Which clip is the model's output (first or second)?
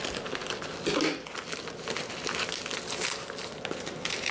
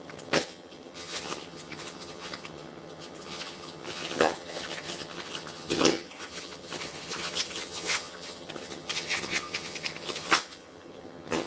second